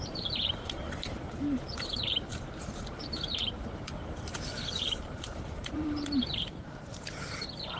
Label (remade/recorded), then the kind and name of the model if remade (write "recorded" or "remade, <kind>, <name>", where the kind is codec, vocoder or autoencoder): remade, vocoder, BigVGAN v2